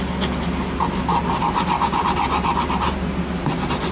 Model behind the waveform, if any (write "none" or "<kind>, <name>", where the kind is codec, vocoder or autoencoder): none